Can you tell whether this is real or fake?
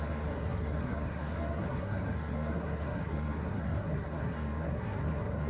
fake